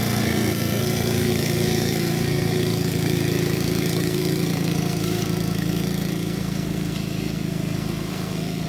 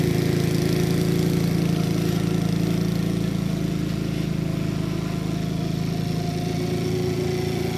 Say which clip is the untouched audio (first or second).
second